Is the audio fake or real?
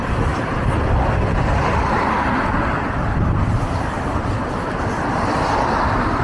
fake